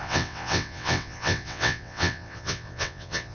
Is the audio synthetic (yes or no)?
yes